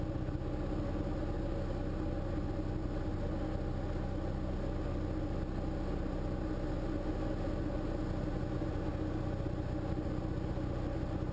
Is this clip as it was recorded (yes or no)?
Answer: yes